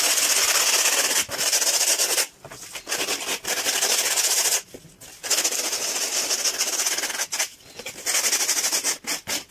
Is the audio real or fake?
real